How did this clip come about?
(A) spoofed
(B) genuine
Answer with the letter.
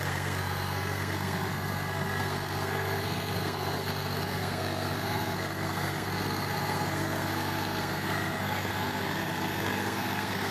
A